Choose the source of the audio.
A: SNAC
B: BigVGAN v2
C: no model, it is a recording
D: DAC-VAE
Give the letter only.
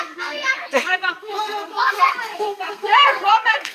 A